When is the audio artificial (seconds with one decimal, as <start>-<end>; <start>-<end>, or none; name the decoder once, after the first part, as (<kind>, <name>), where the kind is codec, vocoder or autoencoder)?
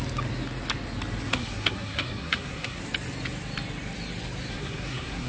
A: 1.3-2.8 (codec, SNAC); 4.5-5.3